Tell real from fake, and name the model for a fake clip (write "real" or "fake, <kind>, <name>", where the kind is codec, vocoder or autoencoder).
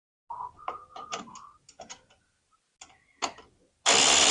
real